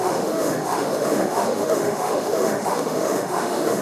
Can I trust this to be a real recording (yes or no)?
no